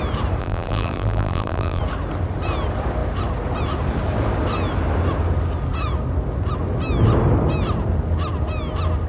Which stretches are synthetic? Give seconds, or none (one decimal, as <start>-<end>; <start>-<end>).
0.4-1.8